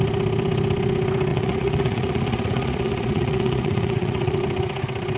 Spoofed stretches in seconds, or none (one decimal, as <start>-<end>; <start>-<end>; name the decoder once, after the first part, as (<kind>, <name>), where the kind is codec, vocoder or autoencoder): 1.3-4.4 (vocoder, Vocos)

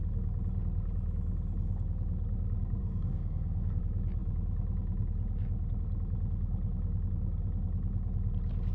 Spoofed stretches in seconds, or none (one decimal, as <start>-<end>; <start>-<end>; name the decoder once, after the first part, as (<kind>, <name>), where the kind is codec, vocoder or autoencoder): 2.8-3.8 (codec, SNAC)